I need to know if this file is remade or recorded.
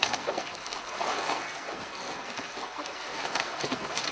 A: remade